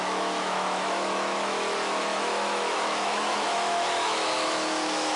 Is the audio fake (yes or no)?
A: yes